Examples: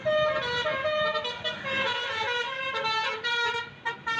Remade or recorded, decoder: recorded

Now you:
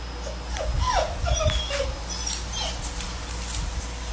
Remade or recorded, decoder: recorded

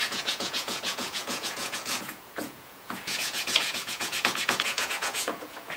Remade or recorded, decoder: remade, vocoder, Vocos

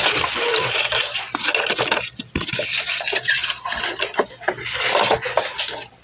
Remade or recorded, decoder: recorded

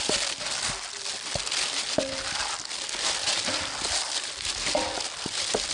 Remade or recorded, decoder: recorded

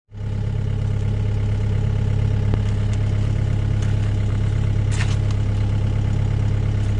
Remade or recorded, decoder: recorded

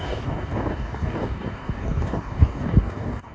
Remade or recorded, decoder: remade, codec, DAC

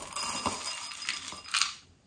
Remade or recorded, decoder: recorded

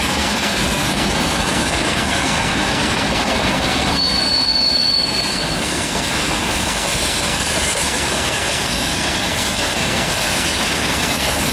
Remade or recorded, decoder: remade, codec, SNAC